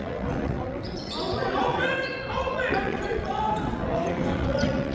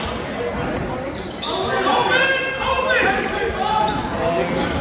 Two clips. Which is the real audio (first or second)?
second